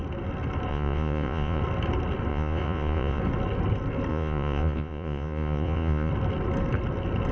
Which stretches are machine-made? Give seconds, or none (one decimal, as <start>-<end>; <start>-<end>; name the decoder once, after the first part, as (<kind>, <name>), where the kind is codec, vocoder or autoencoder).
0.7-1.6 (vocoder, Vocos); 2.3-3.2; 4.1-6.1